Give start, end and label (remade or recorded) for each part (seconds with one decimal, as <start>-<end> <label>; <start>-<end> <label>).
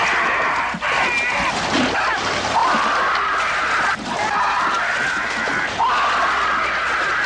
0.0-7.3 recorded